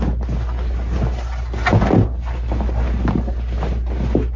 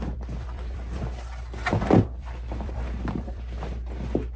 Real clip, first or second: first